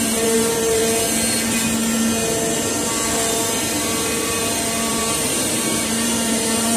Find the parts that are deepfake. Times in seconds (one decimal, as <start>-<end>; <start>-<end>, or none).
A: 0.0-0.8; 3.4-4.4; 4.9-6.8